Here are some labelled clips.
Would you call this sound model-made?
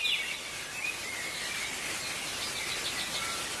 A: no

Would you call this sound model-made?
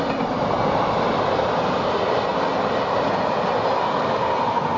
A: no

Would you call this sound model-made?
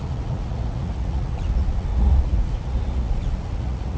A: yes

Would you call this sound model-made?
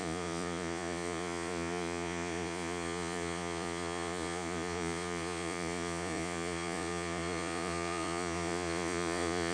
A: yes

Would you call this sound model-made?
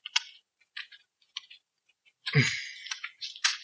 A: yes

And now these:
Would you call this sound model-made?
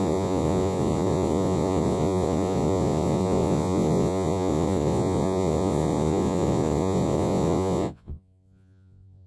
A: yes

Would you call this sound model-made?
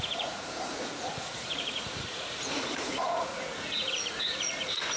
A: yes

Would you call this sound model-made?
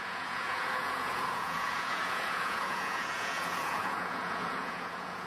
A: yes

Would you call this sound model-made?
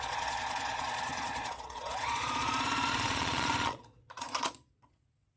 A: yes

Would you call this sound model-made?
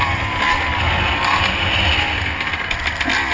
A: no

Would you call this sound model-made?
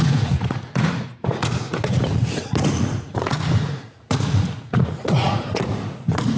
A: yes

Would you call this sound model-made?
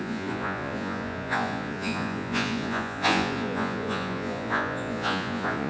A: yes